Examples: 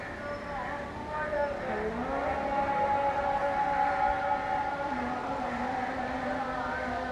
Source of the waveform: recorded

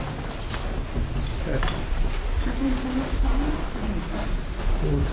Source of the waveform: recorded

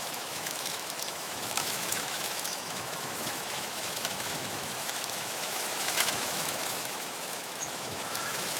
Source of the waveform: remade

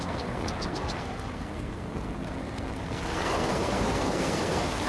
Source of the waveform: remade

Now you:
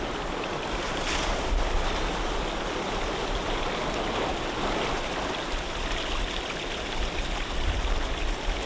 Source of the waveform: recorded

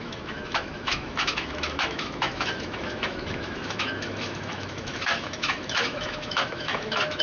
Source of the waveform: remade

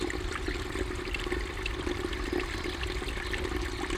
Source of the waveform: recorded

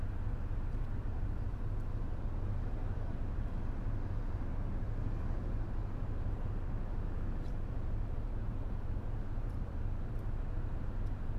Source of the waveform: remade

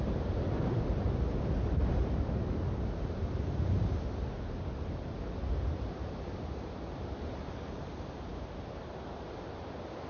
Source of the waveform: remade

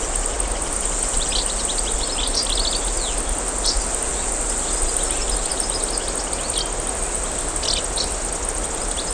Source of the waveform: recorded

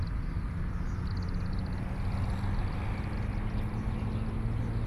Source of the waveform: recorded